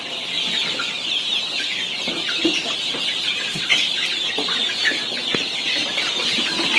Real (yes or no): yes